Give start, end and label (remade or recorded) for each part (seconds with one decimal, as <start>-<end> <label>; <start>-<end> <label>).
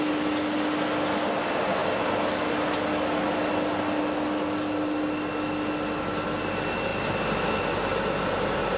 0.0-8.8 recorded